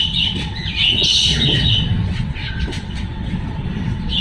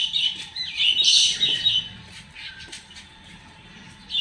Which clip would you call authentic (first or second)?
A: second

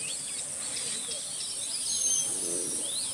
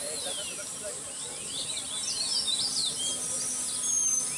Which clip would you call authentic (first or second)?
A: second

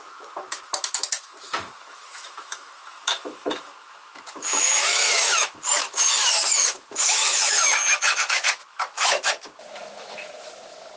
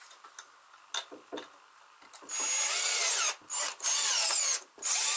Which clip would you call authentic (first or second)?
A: second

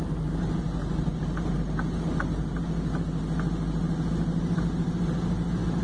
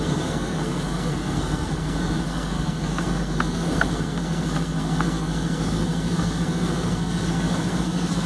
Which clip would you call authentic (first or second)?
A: first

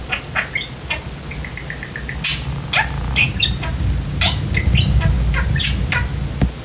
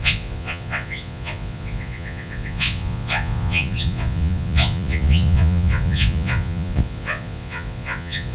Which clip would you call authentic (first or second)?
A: first